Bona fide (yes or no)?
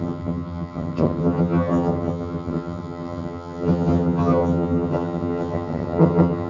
no